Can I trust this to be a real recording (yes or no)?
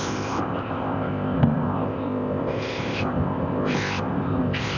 no